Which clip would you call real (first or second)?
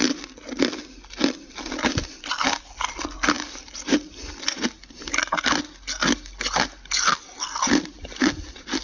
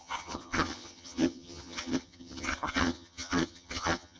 first